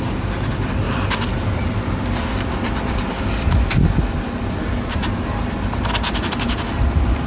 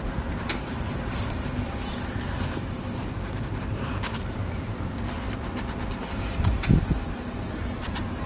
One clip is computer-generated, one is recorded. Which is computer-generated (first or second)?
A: second